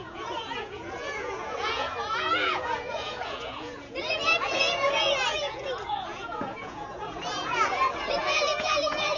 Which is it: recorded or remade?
remade